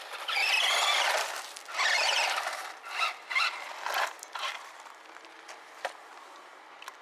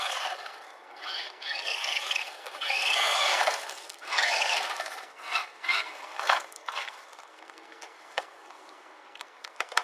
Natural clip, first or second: first